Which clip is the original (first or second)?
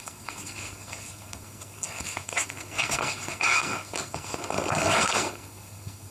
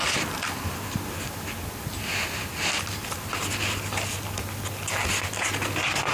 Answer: second